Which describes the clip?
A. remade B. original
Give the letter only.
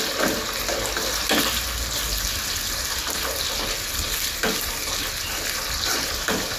B